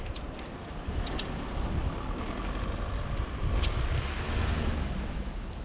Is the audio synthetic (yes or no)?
no